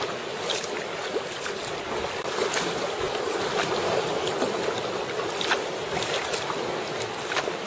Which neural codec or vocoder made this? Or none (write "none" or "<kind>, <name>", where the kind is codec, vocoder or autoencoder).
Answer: none